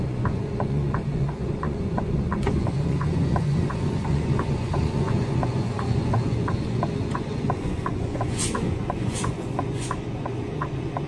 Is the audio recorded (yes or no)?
no